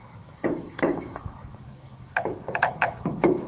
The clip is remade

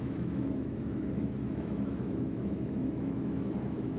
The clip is remade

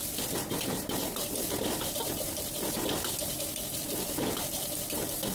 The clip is recorded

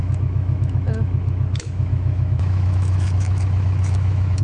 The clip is remade